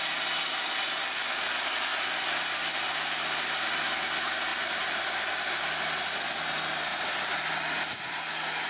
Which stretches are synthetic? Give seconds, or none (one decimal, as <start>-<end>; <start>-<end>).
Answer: 4.5-5.0; 6.9-7.5